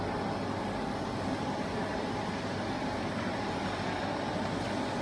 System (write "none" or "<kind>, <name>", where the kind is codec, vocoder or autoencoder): none